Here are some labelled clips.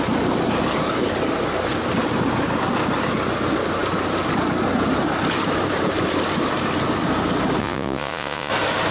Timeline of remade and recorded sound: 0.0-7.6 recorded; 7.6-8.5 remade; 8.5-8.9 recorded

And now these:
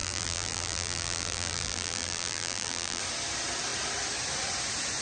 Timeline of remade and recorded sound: 0.0-3.0 remade; 3.0-5.0 recorded

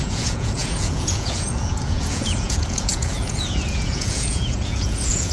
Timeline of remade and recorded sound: 0.0-5.3 remade

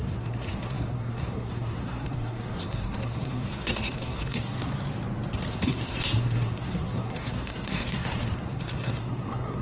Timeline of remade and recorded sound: 0.0-4.7 remade; 4.7-5.5 recorded; 5.5-9.6 remade

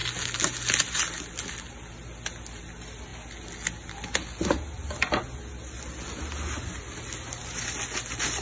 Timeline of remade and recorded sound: 0.0-8.4 recorded